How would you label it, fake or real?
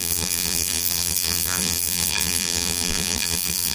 fake